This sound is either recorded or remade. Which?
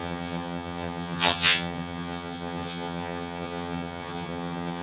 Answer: remade